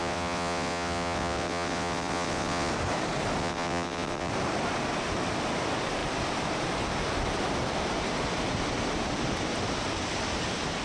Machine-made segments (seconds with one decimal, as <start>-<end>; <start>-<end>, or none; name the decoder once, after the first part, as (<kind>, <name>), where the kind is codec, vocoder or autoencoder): 0.0-2.7 (vocoder, WaveNeXt); 3.4-4.3